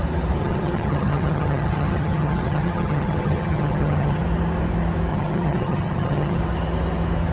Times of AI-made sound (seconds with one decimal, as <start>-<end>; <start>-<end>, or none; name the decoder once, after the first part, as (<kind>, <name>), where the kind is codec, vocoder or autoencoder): 0.4-4.2 (vocoder, HiFi-GAN); 5.1-6.4